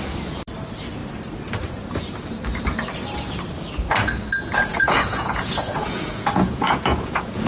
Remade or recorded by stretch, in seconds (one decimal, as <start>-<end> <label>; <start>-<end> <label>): 0.0-4.7 recorded; 4.7-7.5 remade